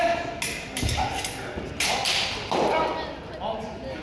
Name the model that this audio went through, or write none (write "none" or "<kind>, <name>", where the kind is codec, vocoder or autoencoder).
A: none